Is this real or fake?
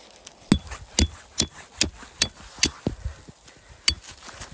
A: real